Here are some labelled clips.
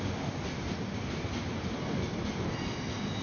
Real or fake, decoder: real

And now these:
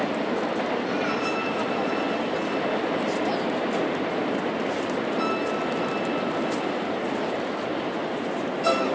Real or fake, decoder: real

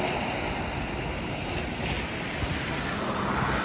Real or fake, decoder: real